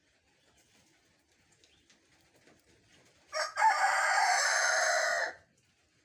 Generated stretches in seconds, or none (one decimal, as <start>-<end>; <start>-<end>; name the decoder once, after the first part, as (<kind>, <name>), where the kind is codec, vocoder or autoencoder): 2.9-5.1 (vocoder, BigVGAN v2)